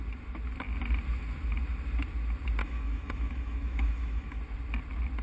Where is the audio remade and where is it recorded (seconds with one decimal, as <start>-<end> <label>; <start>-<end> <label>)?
0.0-2.6 recorded; 2.6-4.4 remade; 4.4-5.2 recorded